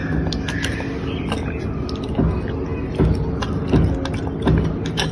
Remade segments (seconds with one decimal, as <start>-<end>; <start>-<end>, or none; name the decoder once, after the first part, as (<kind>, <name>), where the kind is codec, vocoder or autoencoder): none